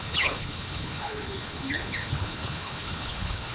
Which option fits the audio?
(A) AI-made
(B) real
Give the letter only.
A